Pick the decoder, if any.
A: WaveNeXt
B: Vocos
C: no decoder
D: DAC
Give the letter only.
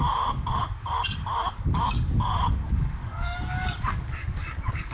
D